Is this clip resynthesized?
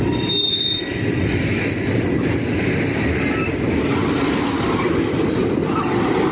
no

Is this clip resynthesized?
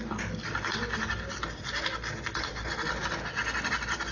no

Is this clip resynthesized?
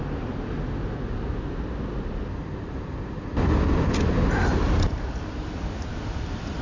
no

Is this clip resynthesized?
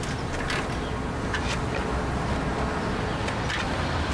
no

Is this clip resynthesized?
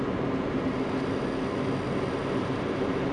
no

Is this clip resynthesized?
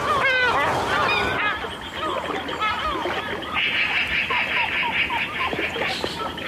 no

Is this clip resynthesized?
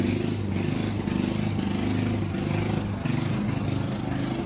no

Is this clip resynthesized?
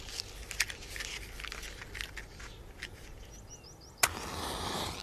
no